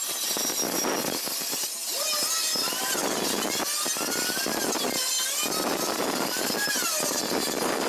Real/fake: fake